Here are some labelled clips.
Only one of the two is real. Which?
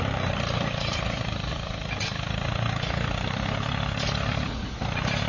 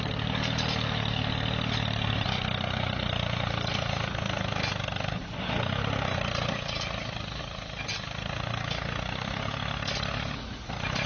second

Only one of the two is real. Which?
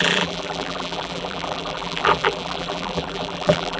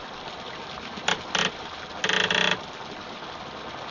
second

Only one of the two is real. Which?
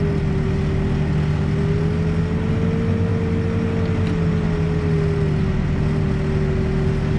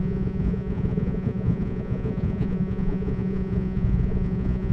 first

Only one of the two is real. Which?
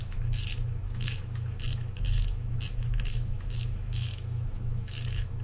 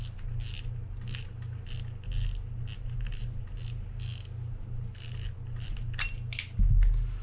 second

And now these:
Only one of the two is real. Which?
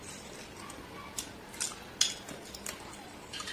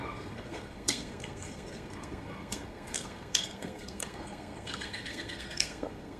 first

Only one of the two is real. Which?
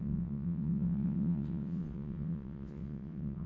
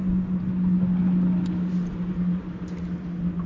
second